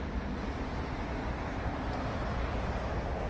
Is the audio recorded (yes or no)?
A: yes